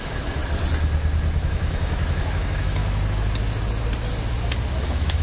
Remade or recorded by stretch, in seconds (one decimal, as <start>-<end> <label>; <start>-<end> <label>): 0.0-0.4 remade; 0.4-1.4 recorded; 1.4-2.8 remade; 2.8-4.8 recorded; 4.8-5.2 remade